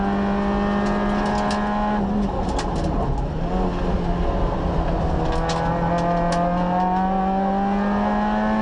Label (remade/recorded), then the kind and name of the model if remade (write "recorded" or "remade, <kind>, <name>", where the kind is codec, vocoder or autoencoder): recorded